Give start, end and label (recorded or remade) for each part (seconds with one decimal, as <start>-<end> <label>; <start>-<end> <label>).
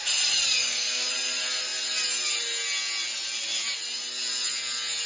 0.0-0.6 recorded; 0.6-1.1 remade; 1.1-5.1 recorded